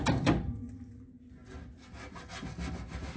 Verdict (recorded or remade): recorded